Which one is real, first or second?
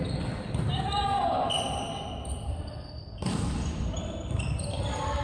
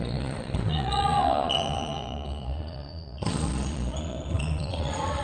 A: first